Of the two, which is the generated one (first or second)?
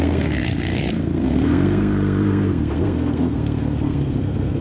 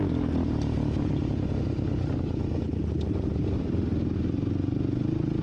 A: first